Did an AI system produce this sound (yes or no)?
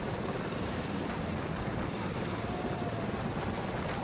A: no